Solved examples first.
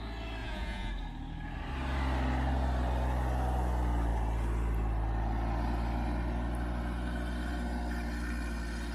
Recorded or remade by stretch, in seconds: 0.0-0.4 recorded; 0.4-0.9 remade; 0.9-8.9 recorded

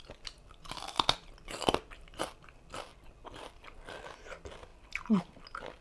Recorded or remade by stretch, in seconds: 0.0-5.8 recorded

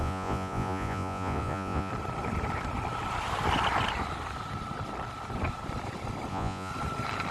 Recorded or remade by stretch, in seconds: 0.0-1.9 remade; 1.9-6.3 recorded; 6.3-6.7 remade; 6.7-7.3 recorded

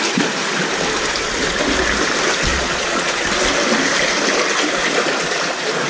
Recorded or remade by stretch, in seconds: 0.0-2.5 recorded; 2.5-3.2 remade; 3.2-5.9 recorded